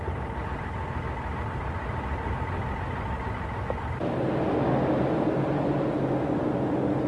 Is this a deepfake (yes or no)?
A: no